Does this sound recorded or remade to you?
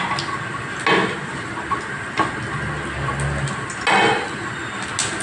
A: recorded